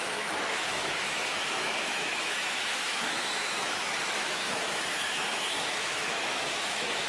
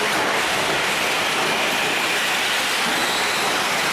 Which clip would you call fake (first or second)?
first